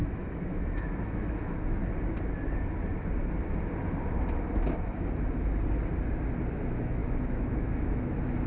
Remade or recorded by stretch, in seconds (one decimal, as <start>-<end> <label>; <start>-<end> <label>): 0.0-1.8 remade; 1.8-6.5 recorded; 6.5-8.5 remade